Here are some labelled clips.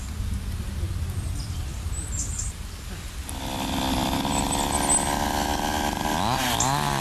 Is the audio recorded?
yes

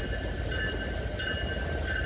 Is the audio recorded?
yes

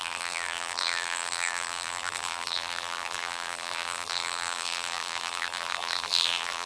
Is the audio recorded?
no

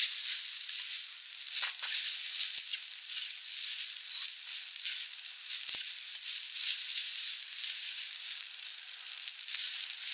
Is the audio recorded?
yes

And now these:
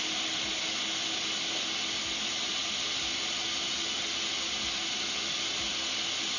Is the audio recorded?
yes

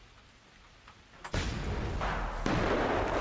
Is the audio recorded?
yes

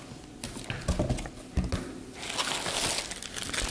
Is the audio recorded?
yes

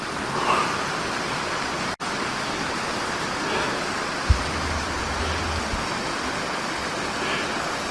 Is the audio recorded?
yes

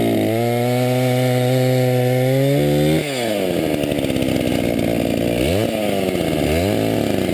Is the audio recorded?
yes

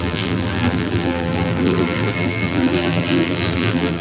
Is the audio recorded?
no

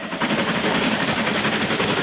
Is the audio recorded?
yes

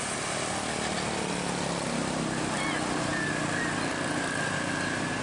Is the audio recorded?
yes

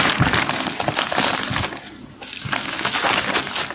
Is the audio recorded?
yes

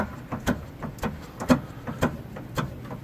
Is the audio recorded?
yes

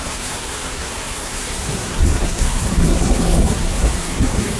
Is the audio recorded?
no